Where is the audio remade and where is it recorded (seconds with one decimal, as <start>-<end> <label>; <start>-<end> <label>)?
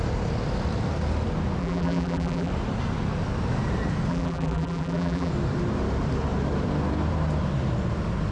0.0-1.6 recorded; 1.6-2.5 remade; 2.5-4.1 recorded; 4.1-5.3 remade; 5.3-8.3 recorded